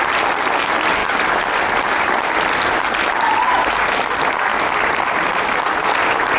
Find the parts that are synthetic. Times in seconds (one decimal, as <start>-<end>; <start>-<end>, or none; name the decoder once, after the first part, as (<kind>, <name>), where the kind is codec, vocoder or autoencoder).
none